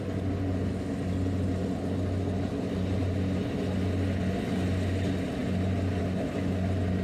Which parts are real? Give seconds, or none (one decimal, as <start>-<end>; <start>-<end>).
0.0-7.0

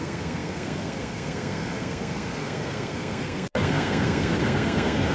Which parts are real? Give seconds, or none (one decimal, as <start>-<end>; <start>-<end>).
none

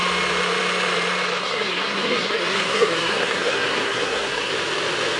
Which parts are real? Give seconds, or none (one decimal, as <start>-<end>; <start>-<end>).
0.0-1.4; 4.5-5.2

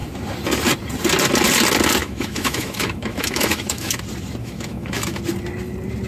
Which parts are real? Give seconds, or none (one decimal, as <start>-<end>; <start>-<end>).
0.0-2.0; 4.0-4.4; 5.2-6.1

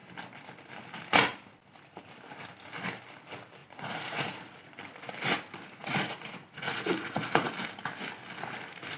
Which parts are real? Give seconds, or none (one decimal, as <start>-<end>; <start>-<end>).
0.0-3.6; 4.5-5.8; 7.5-9.0

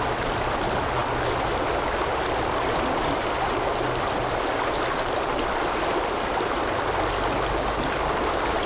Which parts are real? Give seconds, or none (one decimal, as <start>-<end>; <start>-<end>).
0.0-8.7

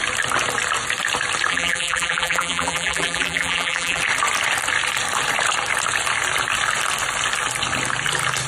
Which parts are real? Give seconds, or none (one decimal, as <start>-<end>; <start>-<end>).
0.0-1.5; 4.0-8.5